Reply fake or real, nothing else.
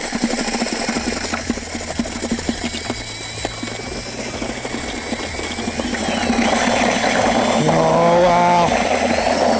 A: real